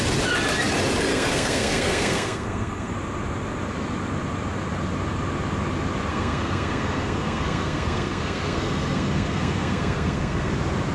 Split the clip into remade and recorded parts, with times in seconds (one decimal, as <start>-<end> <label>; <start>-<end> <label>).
0.0-1.1 recorded; 1.1-2.9 remade; 2.9-6.1 recorded; 6.1-10.5 remade; 10.5-10.9 recorded

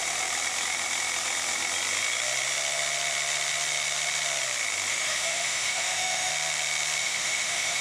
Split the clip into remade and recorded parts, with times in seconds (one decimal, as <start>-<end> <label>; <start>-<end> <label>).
0.0-4.9 recorded; 4.9-6.3 remade; 6.3-7.0 recorded; 7.0-7.8 remade

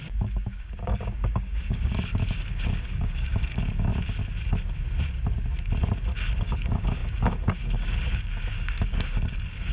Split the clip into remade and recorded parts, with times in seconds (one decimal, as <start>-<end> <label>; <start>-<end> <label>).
0.0-3.9 remade; 3.9-6.4 recorded; 6.4-9.7 remade

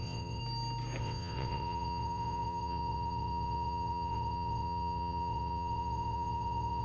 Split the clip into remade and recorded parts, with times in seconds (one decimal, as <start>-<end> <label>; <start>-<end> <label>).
0.0-0.4 remade; 0.4-1.0 recorded; 1.0-6.8 remade

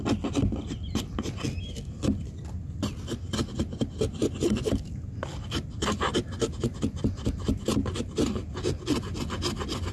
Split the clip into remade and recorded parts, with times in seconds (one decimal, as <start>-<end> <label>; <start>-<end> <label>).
0.0-9.9 recorded

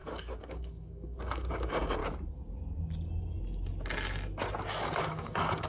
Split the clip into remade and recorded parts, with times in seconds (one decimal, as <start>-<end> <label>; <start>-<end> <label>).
0.0-2.0 remade; 2.0-5.0 recorded; 5.0-5.7 remade

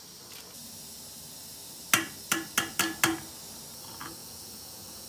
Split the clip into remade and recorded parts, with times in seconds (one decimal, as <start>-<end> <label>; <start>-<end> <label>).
0.0-4.2 recorded; 4.2-5.1 remade

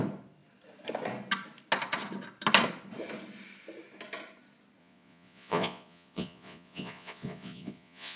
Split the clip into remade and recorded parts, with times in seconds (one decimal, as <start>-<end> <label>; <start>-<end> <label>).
0.0-4.8 recorded; 4.8-8.2 remade